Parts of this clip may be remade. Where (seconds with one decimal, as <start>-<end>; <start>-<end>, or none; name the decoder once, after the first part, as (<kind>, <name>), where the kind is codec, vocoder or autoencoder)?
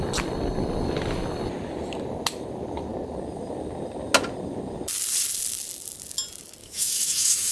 6.6-7.5 (autoencoder, DAC-VAE)